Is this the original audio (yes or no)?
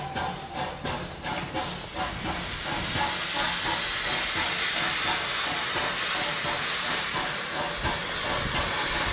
yes